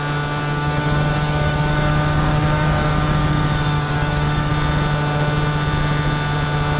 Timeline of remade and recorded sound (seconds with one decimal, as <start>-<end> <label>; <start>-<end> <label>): 0.0-0.4 recorded; 0.4-4.5 remade; 4.5-6.8 recorded